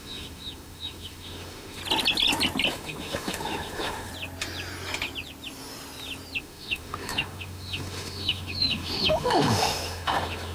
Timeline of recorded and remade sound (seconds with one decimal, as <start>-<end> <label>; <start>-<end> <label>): 0.0-1.8 remade; 1.8-2.7 recorded; 2.7-4.1 remade; 4.1-6.4 recorded; 6.4-10.5 remade